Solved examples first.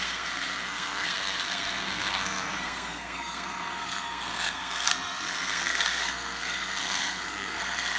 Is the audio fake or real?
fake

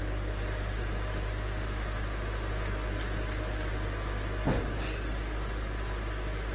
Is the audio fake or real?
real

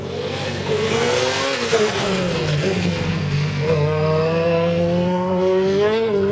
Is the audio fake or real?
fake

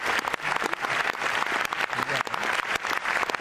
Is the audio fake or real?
real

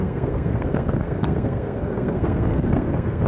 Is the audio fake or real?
fake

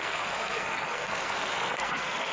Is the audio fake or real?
fake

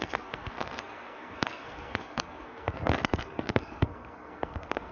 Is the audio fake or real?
fake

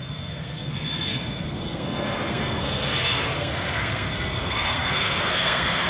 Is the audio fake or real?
fake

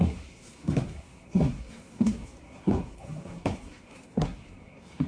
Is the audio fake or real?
fake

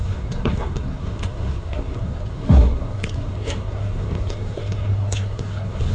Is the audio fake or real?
fake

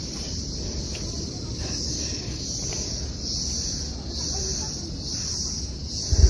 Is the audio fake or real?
real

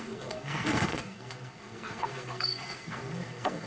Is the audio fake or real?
fake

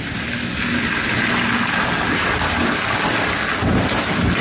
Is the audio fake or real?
real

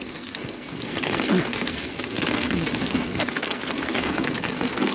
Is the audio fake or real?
fake